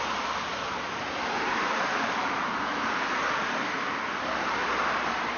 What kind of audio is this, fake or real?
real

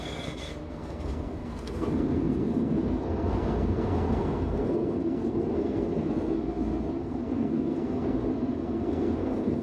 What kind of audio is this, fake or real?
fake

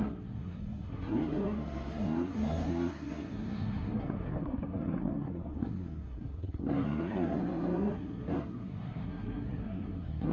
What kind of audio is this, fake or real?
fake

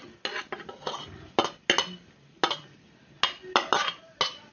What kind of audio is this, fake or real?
real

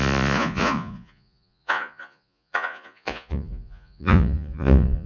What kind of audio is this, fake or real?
fake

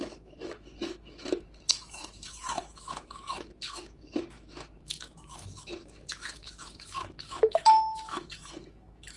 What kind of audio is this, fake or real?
fake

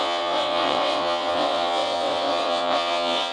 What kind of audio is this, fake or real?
fake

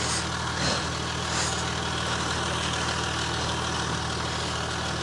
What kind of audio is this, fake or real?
real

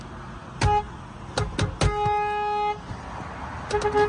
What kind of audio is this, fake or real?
real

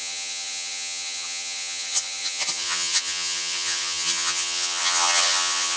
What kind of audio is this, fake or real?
fake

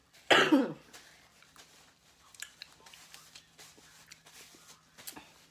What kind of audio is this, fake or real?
real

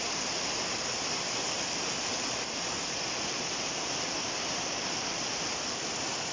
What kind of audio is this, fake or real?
fake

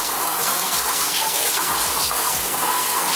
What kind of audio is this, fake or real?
fake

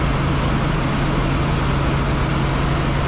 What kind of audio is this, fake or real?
real